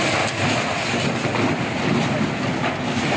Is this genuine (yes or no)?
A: yes